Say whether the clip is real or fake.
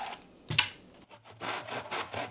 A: real